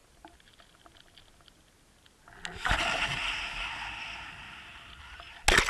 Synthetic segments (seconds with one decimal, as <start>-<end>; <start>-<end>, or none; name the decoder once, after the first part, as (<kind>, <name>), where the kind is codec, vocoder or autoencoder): none